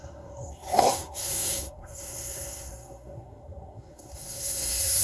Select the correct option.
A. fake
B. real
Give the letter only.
A